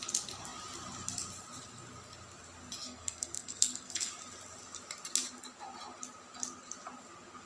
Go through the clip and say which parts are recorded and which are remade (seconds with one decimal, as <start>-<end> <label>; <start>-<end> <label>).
0.0-2.8 recorded; 2.8-4.1 remade; 4.1-7.5 recorded